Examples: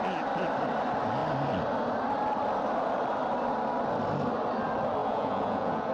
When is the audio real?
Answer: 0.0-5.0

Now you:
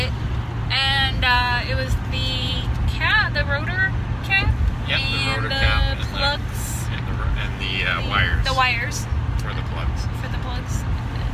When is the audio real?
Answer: 0.0-11.3

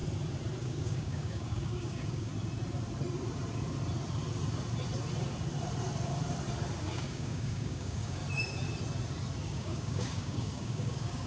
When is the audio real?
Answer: 0.0-0.6; 2.3-6.8; 8.2-9.4

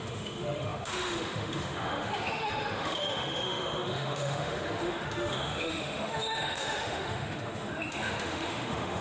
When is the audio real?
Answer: none

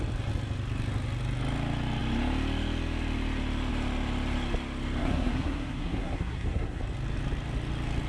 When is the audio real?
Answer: 0.0-5.0; 6.8-8.1

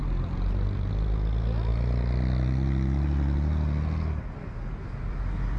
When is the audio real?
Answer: 0.9-5.6

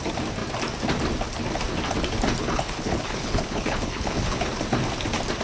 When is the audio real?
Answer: 0.0-2.4; 4.5-5.4

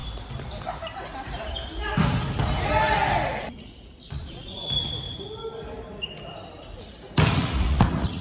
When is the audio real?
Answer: 0.0-3.4; 4.6-7.3